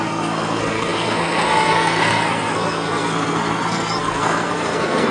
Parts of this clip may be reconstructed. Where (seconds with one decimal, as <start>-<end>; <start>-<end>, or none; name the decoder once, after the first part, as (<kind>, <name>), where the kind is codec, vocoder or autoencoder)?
0.0-5.1 (codec, SNAC)